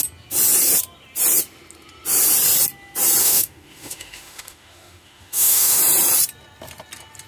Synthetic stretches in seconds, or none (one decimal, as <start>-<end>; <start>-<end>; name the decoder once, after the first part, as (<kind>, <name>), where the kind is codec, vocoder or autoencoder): 3.2-5.8 (autoencoder, DAC-VAE)